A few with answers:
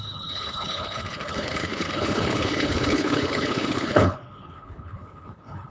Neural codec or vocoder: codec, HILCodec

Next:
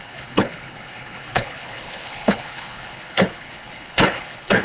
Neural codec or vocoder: codec, HILCodec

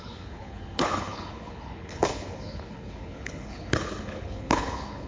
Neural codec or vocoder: codec, HILCodec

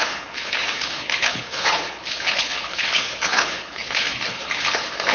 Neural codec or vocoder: codec, HILCodec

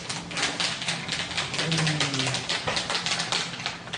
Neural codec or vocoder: none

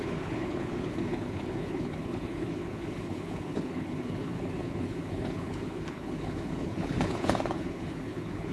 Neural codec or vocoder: codec, HILCodec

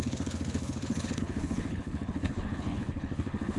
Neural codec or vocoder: codec, HILCodec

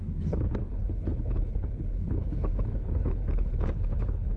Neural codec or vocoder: codec, HILCodec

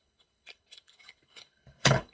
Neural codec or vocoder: codec, HILCodec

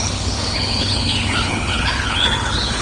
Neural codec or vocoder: codec, HILCodec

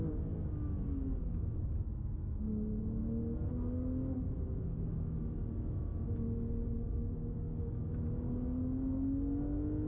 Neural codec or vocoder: none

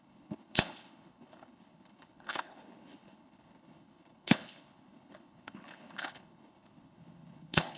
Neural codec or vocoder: codec, HILCodec